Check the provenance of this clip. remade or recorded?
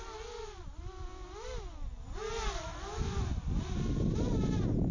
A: recorded